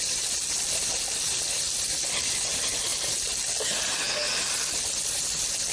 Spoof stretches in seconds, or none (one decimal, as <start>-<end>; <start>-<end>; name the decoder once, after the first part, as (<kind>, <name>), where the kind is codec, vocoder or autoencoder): none

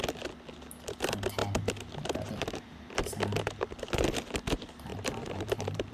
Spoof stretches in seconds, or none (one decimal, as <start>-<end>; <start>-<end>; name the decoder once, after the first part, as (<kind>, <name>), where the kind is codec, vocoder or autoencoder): 4.9-5.9 (vocoder, BigVGAN v2)

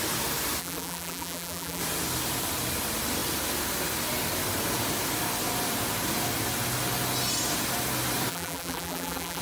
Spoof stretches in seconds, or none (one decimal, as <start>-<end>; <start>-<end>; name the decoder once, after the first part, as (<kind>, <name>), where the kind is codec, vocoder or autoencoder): 0.6-1.8 (vocoder, BigVGAN v2); 8.3-9.4

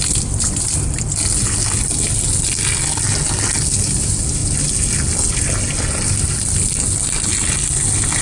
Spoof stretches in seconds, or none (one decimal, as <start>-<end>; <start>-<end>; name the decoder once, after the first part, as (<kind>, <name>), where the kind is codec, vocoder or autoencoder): none

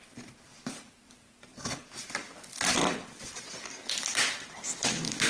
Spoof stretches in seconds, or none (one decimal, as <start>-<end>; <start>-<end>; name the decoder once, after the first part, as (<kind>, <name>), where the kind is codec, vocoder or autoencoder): 0.5-3.5 (vocoder, BigVGAN v2)

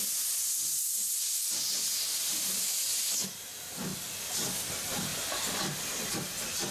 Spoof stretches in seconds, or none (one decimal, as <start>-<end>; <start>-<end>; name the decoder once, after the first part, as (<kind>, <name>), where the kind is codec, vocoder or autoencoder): none

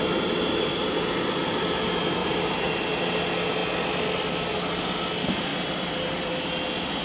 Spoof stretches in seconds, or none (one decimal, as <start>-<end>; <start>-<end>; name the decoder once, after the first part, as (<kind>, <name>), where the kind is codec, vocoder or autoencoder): 2.2-2.7 (vocoder, BigVGAN v2); 5.5-6.3